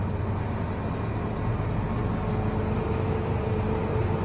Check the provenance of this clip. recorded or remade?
recorded